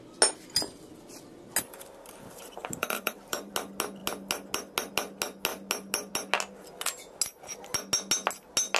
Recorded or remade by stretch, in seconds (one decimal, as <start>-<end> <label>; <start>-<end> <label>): 0.0-2.6 recorded; 2.6-3.5 remade; 3.5-8.8 recorded